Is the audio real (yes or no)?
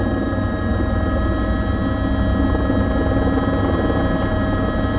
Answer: yes